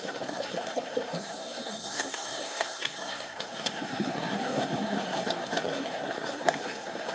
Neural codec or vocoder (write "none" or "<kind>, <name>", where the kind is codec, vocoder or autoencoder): codec, SNAC